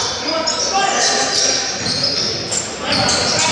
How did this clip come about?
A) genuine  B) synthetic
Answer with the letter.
A